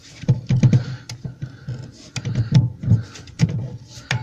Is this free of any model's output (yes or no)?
yes